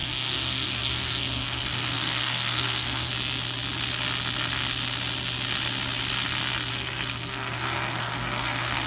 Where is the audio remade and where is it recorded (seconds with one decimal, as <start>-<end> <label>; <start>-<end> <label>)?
0.0-3.1 remade; 3.1-6.7 recorded; 6.7-8.9 remade